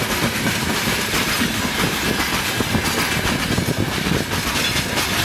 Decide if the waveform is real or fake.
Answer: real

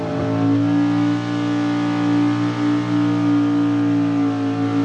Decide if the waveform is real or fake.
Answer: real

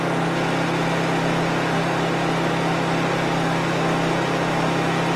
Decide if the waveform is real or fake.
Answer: real